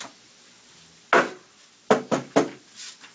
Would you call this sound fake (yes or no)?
no